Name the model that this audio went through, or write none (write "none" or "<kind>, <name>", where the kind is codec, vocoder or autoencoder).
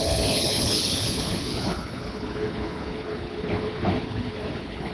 codec, HILCodec